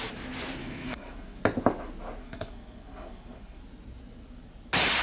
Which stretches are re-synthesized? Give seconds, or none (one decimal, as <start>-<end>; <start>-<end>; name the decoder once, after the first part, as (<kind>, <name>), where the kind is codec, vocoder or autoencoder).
0.6-1.4 (codec, SNAC); 2.2-3.6